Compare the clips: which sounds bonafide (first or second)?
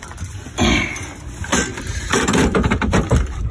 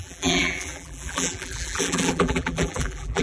first